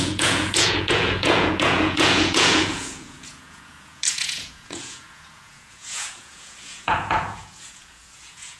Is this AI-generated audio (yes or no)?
yes